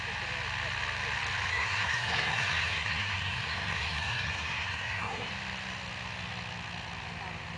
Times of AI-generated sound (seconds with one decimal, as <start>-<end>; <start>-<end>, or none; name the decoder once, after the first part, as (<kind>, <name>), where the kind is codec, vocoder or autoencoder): 1.5-5.3 (codec, SNAC)